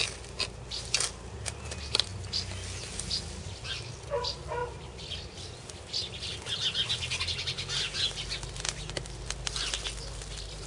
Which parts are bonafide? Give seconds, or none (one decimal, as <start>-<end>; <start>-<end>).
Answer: 0.0-10.7